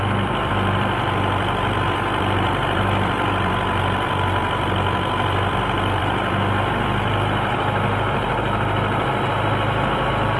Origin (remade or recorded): remade